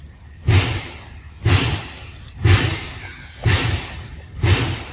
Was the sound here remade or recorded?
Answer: recorded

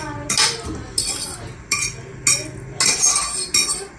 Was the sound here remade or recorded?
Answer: recorded